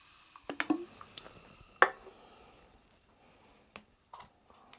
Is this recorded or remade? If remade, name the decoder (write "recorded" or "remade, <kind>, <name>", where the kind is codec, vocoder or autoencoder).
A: recorded